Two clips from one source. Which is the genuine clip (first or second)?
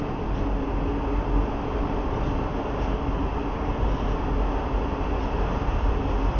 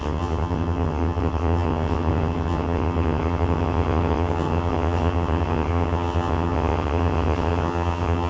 first